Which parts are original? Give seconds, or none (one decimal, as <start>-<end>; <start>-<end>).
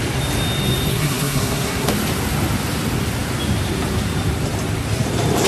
0.0-0.9; 1.9-5.5